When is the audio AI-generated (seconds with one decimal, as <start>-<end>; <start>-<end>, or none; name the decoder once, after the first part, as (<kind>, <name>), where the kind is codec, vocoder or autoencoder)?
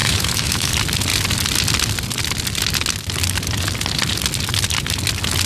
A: 0.0-0.7 (autoencoder, DAC-VAE)